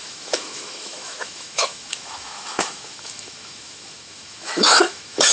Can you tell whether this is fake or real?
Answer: fake